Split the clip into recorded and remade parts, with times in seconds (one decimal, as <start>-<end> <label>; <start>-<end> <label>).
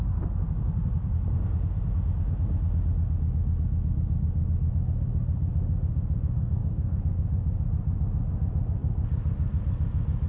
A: 0.0-6.4 recorded; 6.4-7.0 remade; 7.0-10.3 recorded